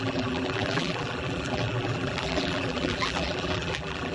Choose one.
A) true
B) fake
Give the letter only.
B